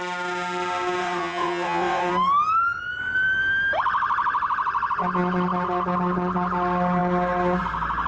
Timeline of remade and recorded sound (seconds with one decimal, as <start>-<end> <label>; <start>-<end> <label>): 0.0-1.0 recorded; 1.0-2.1 remade; 2.1-8.1 recorded